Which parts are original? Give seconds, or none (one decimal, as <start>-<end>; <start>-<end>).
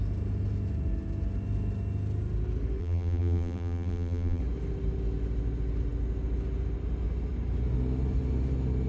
0.0-2.8; 4.4-8.9